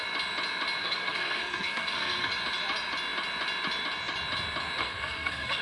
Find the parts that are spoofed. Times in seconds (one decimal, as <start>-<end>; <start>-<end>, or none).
0.8-2.3; 4.8-5.6